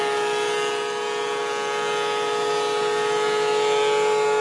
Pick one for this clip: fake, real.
real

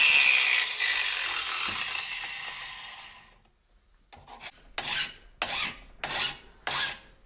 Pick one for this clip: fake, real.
real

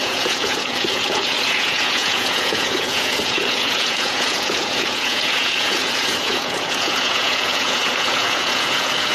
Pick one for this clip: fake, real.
fake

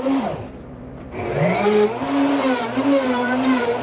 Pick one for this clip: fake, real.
fake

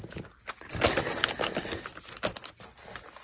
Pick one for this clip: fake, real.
real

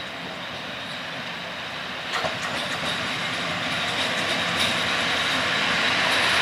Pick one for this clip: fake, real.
real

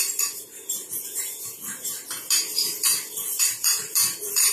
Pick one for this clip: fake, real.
fake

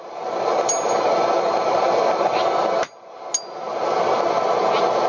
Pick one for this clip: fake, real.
real